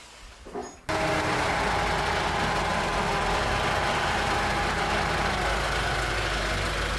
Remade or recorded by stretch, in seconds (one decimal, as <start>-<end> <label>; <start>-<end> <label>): 0.0-2.7 recorded; 2.7-4.8 remade; 4.8-7.0 recorded